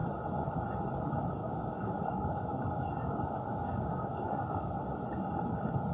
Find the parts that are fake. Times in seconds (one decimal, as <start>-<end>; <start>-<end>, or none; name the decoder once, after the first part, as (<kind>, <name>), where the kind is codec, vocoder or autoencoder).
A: 1.4-4.7 (codec, DAC)